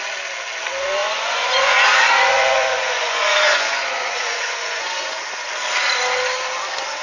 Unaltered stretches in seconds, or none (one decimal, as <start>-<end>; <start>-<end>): 0.0-1.0; 5.2-7.0